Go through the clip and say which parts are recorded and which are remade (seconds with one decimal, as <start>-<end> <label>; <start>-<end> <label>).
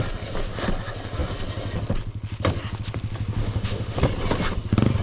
0.0-3.4 recorded; 3.4-4.0 remade; 4.0-5.0 recorded